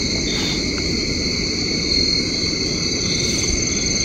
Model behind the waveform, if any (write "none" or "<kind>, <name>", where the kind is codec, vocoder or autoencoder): none